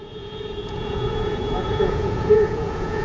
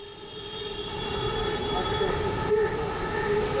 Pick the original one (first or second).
second